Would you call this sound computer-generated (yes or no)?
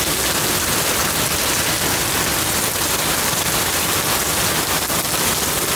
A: no